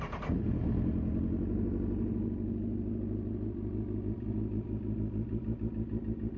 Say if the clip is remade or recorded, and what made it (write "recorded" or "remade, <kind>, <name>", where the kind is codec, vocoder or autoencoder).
recorded